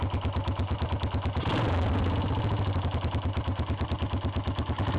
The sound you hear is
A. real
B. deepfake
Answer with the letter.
A